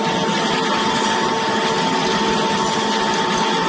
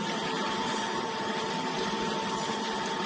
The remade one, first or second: second